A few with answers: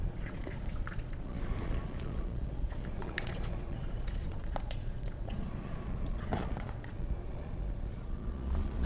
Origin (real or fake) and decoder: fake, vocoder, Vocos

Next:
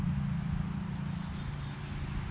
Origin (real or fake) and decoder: real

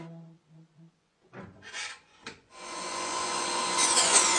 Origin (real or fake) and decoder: fake, vocoder, Vocos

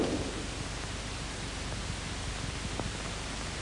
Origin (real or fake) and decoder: real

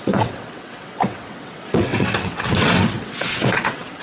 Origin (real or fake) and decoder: fake, vocoder, WaveNeXt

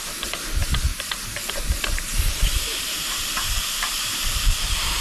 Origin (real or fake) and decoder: fake, vocoder, BigVGAN v2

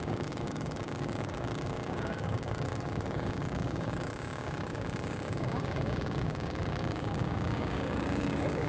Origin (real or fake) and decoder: fake, codec, DAC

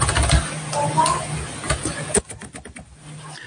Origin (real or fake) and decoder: real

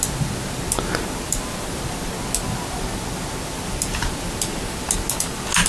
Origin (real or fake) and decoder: real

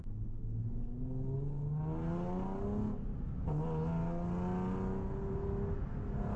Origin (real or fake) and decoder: real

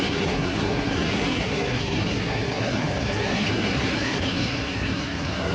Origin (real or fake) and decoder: fake, codec, SNAC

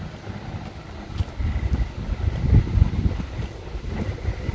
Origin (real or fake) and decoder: real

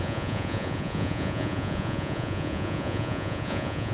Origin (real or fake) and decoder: fake, vocoder, Vocos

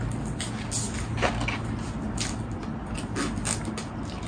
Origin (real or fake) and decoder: real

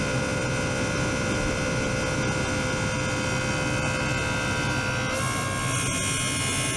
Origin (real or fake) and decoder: real